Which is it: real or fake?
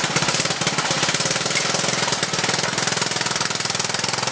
real